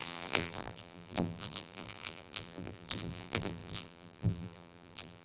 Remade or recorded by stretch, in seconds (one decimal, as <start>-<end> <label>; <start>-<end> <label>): 0.0-5.2 remade